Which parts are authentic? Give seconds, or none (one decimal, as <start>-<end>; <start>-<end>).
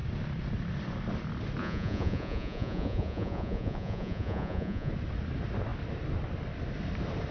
0.0-1.6; 4.9-7.3